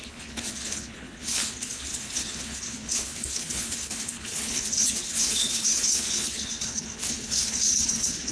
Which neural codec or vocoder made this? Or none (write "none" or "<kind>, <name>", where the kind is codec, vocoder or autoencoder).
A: codec, HILCodec